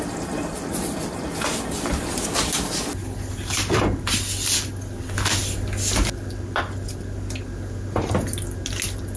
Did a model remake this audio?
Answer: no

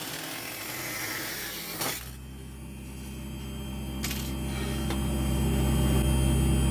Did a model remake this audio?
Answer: no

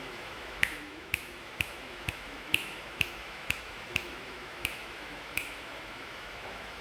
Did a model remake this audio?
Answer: yes